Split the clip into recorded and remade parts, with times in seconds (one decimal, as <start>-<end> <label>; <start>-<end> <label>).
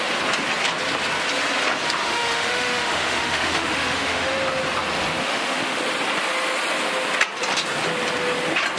0.0-2.0 recorded; 2.0-4.3 remade; 4.3-5.2 recorded; 5.2-5.8 remade; 5.8-8.8 recorded